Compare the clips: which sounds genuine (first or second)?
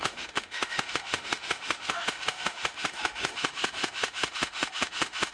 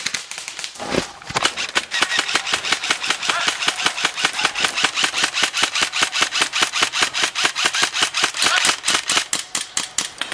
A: second